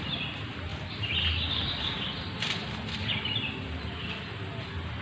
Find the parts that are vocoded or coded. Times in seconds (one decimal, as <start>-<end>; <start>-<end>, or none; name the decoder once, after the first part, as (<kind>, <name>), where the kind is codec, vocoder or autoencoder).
none